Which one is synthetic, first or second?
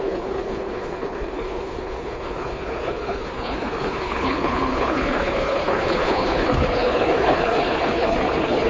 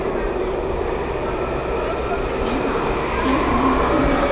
first